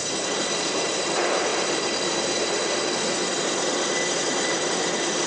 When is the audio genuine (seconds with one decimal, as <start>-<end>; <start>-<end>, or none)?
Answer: 1.5-4.7